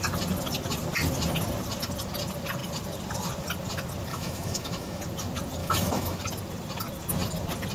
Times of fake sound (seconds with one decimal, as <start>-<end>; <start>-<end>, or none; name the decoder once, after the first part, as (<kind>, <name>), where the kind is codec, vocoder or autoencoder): 4.1-5.0 (autoencoder, DAC-VAE); 5.6-6.2